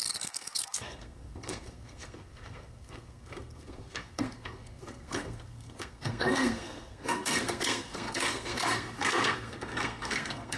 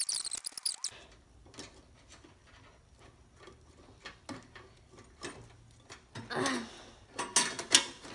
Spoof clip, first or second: first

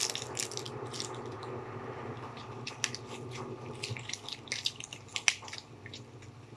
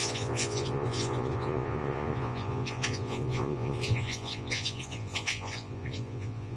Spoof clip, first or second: second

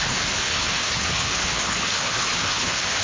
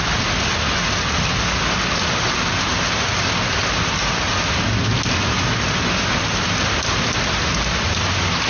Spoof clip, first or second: first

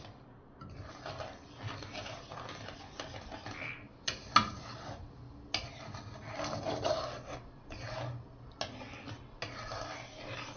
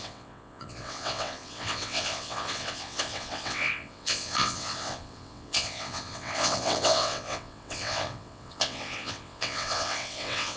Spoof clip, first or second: second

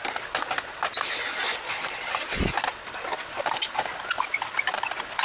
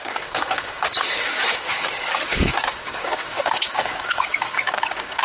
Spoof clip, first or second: second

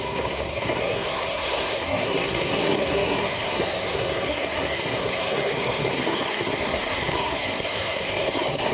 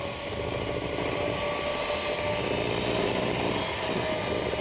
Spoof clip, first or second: first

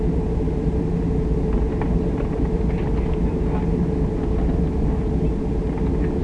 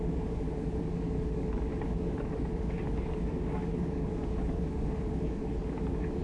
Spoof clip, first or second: second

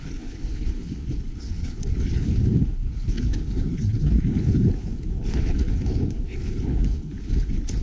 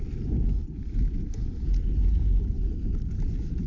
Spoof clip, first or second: first